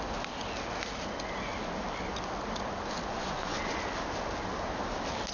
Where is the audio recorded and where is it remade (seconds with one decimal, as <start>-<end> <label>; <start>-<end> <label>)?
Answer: 0.0-3.1 recorded; 3.1-3.7 remade; 3.7-5.3 recorded

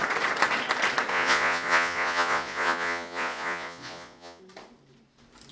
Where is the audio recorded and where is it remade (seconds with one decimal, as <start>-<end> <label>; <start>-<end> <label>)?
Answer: 0.0-1.1 recorded; 1.1-4.4 remade; 4.4-5.5 recorded

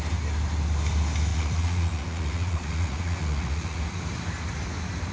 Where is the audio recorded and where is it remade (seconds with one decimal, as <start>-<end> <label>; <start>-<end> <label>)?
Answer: 0.0-1.3 recorded; 1.3-3.8 remade; 3.8-5.1 recorded